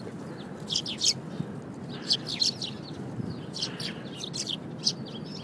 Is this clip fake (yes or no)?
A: no